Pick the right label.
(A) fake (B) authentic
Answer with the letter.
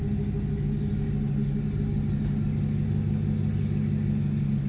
B